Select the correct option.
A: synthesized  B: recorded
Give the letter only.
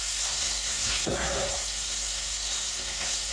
A